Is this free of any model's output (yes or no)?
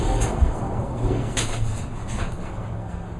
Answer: no